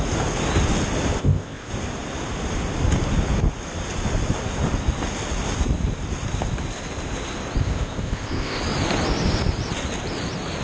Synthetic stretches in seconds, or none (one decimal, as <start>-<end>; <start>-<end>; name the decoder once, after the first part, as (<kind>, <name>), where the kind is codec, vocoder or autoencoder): 1.2-1.7 (codec, ZipCodec); 7.6-8.6